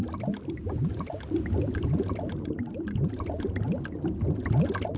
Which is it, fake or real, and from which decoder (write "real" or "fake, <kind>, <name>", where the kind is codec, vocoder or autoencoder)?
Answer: real